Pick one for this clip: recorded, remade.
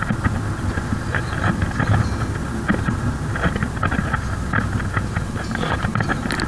recorded